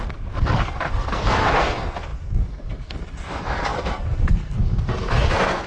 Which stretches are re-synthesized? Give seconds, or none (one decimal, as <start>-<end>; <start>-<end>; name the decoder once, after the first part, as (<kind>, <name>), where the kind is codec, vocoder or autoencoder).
0.0-5.7 (codec, SNAC)